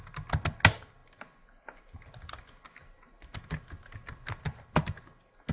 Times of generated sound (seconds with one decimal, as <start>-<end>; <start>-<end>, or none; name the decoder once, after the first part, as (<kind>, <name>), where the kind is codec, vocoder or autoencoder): none